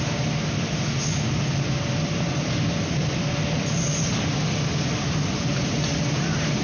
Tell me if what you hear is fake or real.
real